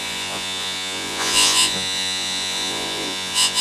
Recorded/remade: remade